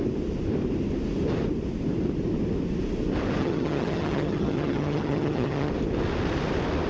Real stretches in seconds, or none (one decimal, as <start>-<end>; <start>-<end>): 0.0-3.4; 5.7-6.9